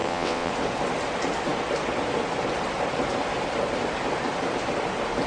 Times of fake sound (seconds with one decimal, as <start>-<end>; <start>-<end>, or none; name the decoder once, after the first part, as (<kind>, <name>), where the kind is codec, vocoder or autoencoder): 0.0-0.5 (vocoder, WaveNeXt)